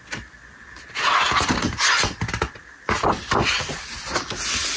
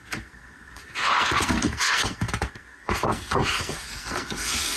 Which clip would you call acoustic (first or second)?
first